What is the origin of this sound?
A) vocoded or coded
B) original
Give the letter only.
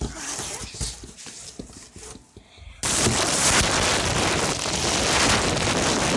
B